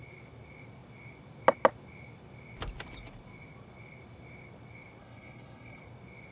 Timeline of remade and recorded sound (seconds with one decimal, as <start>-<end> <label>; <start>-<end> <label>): 0.0-5.0 recorded; 5.0-5.8 remade; 5.8-6.3 recorded